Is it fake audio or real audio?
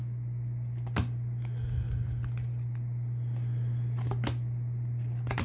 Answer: real